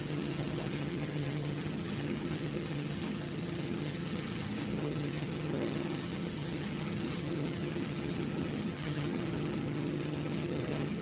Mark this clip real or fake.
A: fake